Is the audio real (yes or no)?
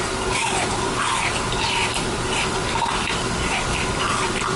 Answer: no